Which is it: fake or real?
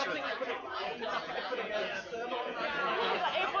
fake